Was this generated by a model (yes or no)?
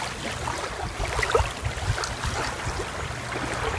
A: no